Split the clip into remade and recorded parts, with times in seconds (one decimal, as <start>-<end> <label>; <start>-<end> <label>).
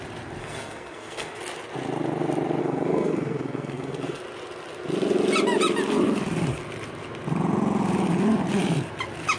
0.0-0.4 recorded; 0.4-1.4 remade; 1.4-2.6 recorded; 2.6-4.2 remade; 4.2-9.4 recorded